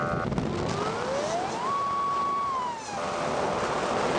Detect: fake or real real